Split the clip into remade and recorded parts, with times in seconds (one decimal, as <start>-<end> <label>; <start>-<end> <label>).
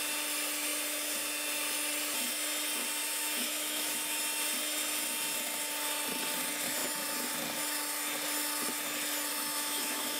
0.0-3.0 recorded; 3.0-4.2 remade; 4.2-9.3 recorded; 9.3-10.2 remade